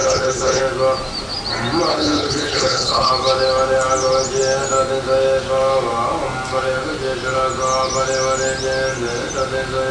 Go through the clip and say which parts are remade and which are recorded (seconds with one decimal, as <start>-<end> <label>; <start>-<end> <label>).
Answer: 0.0-0.6 remade; 0.6-1.9 recorded; 1.9-3.1 remade; 3.1-9.9 recorded